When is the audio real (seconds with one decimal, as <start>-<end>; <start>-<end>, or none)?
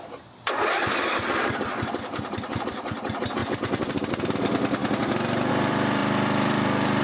4.8-5.5